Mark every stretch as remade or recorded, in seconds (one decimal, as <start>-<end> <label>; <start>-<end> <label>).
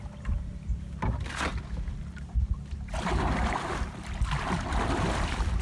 0.0-5.6 recorded